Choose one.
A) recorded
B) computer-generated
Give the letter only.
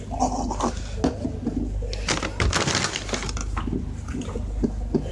A